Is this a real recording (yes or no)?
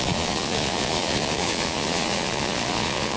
no